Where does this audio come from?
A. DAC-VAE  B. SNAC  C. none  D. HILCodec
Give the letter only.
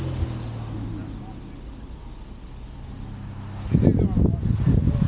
C